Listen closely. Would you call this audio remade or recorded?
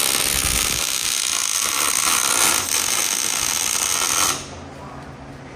recorded